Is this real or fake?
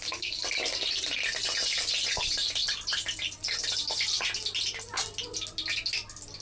real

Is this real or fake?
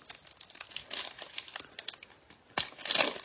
real